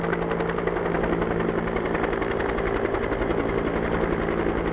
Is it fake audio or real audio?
real